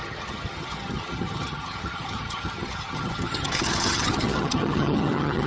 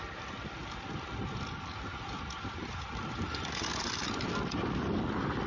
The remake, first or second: first